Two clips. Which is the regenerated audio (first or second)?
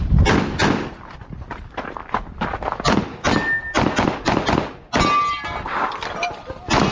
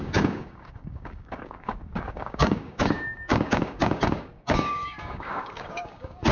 second